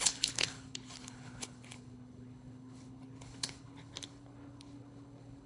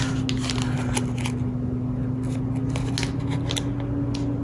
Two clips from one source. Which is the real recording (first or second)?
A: second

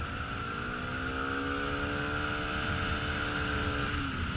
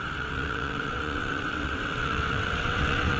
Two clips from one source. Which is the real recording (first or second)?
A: first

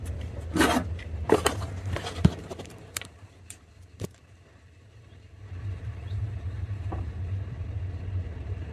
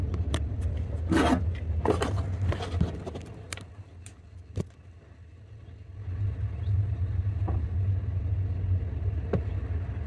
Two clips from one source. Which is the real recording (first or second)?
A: second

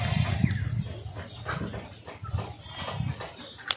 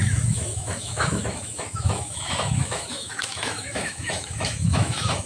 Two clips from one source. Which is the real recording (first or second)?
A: first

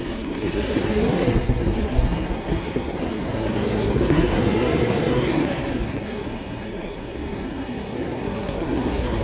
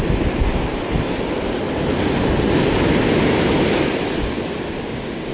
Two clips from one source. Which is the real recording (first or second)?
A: second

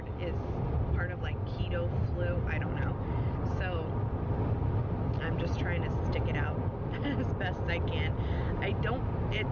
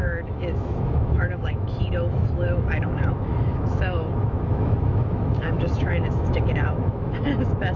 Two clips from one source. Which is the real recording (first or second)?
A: first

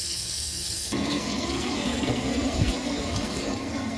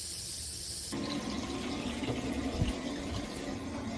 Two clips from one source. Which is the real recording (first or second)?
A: second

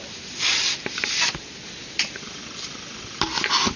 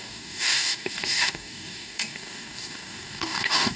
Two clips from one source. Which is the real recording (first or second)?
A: first